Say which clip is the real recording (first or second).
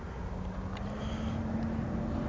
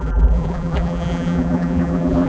first